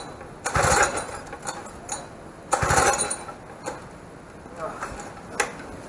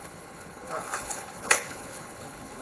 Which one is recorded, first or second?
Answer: first